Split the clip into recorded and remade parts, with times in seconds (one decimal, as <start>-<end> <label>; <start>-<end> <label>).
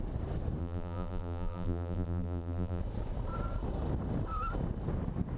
0.0-0.6 recorded; 0.6-2.8 remade; 2.8-5.4 recorded